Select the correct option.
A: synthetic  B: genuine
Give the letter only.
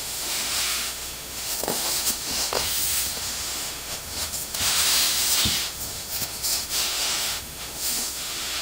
A